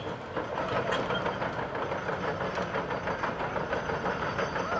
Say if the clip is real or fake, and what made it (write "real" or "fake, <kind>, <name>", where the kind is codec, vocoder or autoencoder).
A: real